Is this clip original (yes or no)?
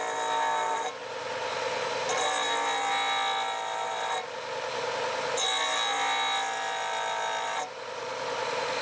yes